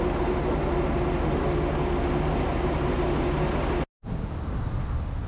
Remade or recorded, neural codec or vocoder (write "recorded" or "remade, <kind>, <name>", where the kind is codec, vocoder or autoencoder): recorded